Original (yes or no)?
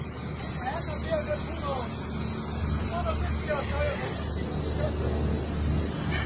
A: yes